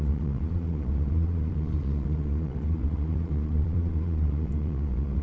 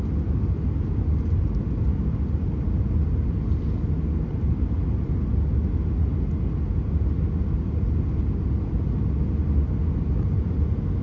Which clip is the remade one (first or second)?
first